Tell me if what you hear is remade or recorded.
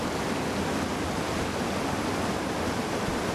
recorded